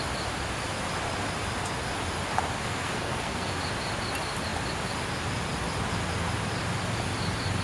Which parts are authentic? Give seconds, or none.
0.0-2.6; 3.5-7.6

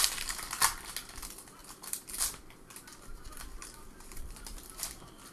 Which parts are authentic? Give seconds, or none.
0.0-1.6; 3.3-5.3

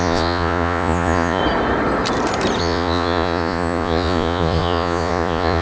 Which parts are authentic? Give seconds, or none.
1.4-2.6

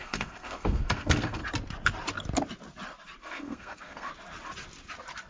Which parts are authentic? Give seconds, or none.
1.4-3.2; 4.1-5.3

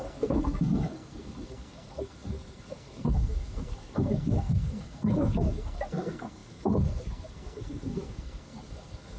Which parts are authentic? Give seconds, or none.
none

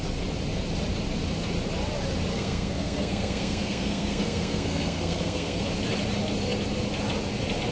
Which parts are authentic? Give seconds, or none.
0.0-2.3; 5.6-7.7

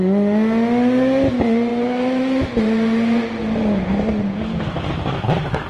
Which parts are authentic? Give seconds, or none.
0.0-5.7